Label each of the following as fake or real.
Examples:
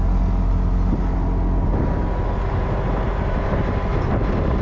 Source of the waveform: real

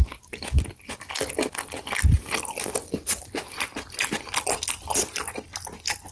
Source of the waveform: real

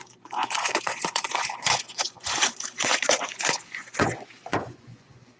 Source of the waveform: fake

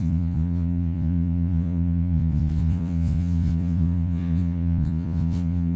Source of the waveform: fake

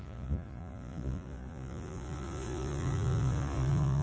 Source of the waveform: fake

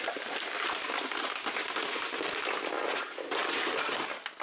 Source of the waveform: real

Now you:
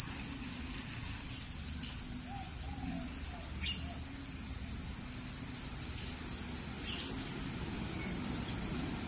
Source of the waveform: real